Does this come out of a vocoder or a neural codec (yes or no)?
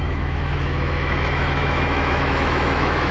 yes